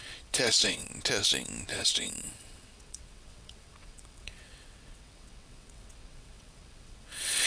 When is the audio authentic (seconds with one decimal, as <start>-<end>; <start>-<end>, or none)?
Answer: 0.9-1.7